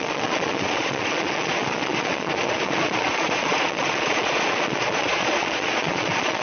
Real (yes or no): no